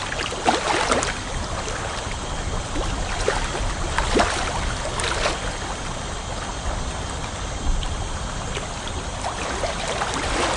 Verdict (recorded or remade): recorded